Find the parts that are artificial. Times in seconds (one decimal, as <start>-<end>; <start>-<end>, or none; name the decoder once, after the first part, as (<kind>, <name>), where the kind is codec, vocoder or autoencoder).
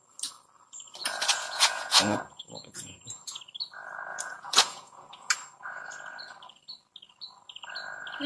1.0-3.4 (vocoder, Vocos); 4.1-5.3